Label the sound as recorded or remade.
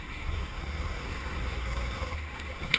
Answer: remade